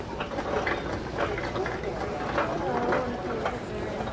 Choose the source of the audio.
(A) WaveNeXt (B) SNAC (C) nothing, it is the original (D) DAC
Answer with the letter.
C